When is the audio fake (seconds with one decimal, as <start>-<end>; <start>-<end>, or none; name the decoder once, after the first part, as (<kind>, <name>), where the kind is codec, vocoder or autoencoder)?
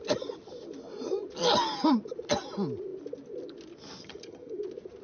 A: 4.0-4.6 (vocoder, HiFi-GAN)